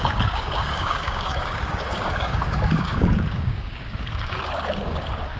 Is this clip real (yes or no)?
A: no